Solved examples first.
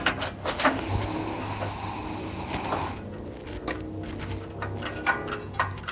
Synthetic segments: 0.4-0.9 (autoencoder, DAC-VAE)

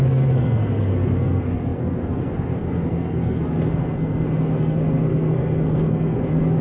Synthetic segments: 0.0-6.6 (codec, SNAC)